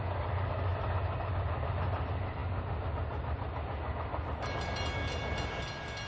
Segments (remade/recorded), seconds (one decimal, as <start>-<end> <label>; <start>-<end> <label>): 0.0-6.1 recorded